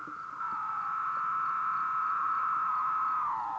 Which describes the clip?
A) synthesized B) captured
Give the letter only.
B